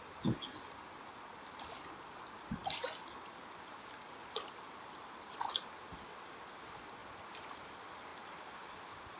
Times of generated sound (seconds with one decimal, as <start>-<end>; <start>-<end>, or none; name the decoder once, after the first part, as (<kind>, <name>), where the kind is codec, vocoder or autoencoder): none